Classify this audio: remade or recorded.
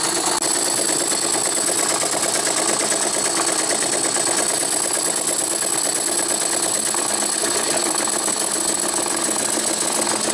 recorded